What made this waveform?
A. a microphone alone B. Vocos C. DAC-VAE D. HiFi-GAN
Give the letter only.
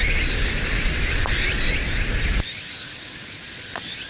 A